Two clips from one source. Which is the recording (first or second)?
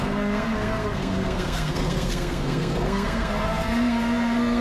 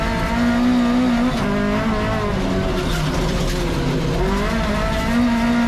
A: second